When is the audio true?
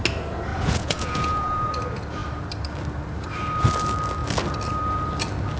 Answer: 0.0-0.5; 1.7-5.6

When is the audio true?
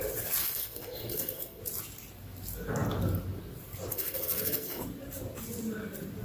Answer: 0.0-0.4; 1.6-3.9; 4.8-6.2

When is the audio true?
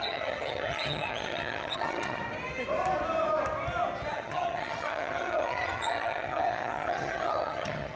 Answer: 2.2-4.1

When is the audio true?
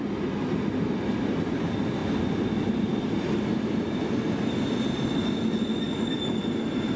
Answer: 0.0-7.0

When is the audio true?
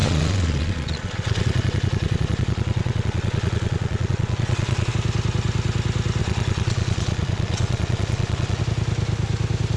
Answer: 4.9-6.2; 8.6-9.8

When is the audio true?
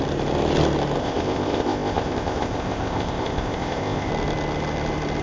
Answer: 0.0-1.0; 4.1-5.2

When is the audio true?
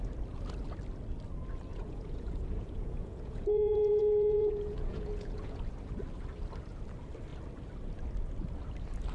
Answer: 0.0-1.7; 5.6-9.1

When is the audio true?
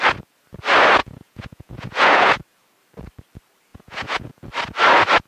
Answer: 0.0-1.0; 2.3-3.7; 4.3-5.3